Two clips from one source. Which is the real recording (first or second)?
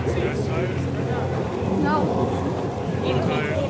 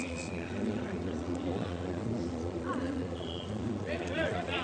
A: first